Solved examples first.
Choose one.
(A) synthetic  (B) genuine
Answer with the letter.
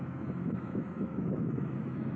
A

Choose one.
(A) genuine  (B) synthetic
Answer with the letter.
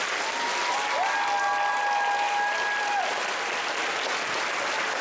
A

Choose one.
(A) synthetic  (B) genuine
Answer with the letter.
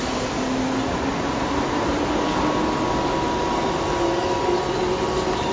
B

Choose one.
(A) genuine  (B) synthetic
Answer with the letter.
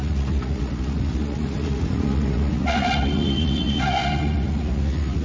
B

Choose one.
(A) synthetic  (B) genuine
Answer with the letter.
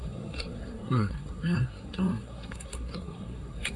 A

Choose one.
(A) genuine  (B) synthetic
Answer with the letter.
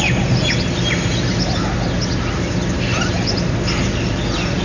A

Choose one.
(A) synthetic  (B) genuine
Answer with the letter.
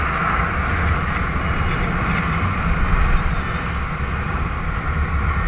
B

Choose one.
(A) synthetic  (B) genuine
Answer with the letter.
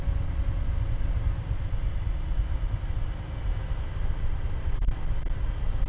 B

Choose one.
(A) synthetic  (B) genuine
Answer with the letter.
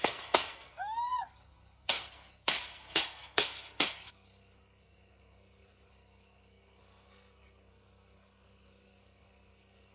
A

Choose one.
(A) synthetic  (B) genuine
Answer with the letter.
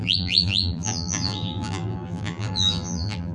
A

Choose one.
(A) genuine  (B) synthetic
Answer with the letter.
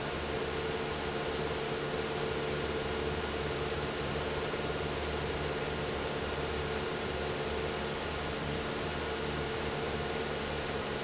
A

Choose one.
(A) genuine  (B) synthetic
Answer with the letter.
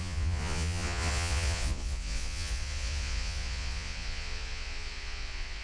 B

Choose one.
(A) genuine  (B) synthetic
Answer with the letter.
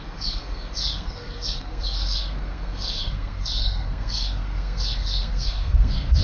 B